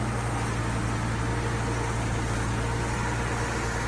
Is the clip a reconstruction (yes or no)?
no